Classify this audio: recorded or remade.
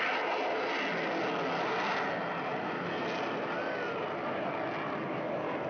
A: recorded